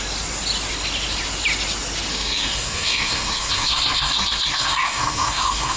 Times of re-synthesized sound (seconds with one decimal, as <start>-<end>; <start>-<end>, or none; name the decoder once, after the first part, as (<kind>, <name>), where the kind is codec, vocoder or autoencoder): 2.1-5.8 (codec, SNAC)